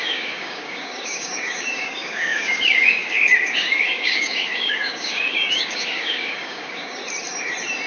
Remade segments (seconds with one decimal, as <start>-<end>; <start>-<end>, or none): 0.0-7.0